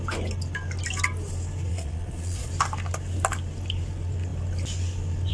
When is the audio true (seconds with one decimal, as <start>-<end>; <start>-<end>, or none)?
0.0-1.7; 2.5-5.3